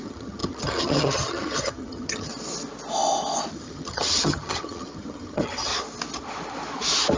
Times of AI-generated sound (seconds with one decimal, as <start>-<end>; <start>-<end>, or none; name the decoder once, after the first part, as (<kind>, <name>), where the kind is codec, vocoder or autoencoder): 0.0-2.3 (vocoder, HiFi-GAN); 3.5-5.7